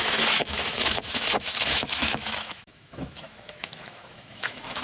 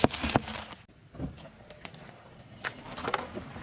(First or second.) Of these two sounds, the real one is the second